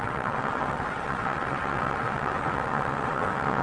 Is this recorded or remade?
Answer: remade